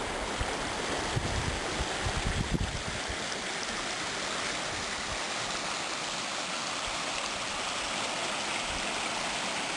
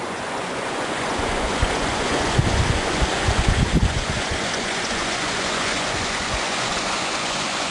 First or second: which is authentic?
first